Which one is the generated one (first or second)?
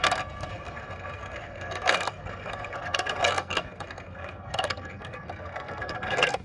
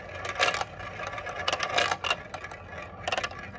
first